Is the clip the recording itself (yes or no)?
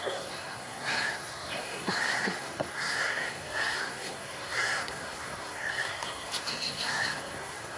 no